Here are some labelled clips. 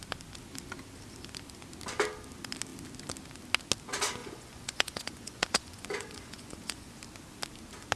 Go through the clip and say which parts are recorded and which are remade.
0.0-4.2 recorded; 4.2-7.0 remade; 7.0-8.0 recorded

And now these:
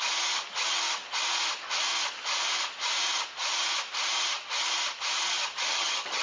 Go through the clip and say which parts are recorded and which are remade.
0.0-5.7 recorded; 5.7-6.2 remade

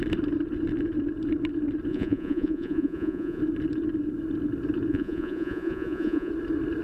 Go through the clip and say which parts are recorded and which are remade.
0.0-1.9 recorded; 1.9-3.4 remade; 3.4-4.9 recorded; 4.9-6.3 remade; 6.3-6.8 recorded

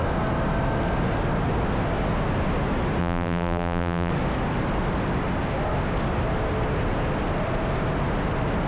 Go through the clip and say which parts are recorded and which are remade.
0.0-3.0 recorded; 3.0-4.1 remade; 4.1-8.7 recorded

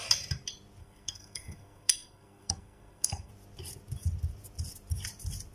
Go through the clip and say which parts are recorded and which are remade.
0.0-0.8 recorded; 0.8-3.3 remade; 3.3-5.5 recorded

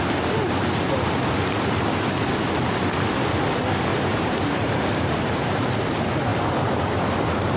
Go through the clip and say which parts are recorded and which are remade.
0.0-3.9 recorded; 3.9-5.7 remade; 5.7-7.6 recorded

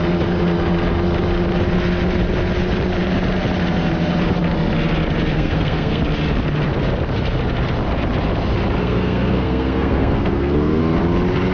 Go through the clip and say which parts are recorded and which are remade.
0.0-5.3 recorded; 5.3-6.0 remade; 6.0-8.8 recorded; 8.8-10.8 remade; 10.8-11.5 recorded

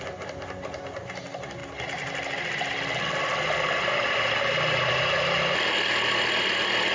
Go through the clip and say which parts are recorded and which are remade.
0.0-6.9 recorded